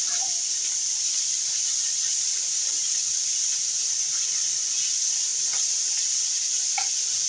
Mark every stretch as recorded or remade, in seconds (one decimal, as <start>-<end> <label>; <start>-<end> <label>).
0.0-5.3 remade; 5.3-7.3 recorded